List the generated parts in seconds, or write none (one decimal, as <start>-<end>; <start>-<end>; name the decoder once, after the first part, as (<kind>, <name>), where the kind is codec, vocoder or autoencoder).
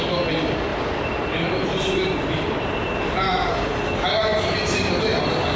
0.7-3.9 (vocoder, BigVGAN v2); 4.3-4.9